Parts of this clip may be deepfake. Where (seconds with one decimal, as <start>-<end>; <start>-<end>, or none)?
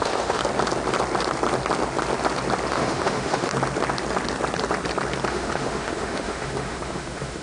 0.0-0.4; 2.7-3.5; 5.3-7.4